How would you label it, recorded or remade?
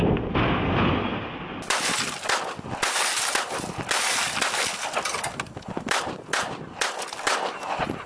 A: recorded